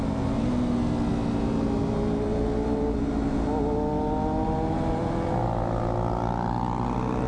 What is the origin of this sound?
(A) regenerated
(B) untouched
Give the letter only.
B